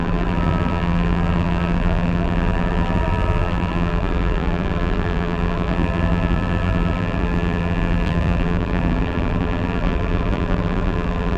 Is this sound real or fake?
fake